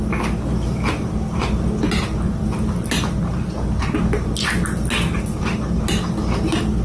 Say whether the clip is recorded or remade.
recorded